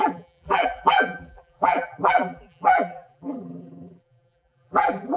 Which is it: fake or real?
fake